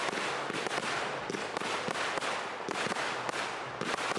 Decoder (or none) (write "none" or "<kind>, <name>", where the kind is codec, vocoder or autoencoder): none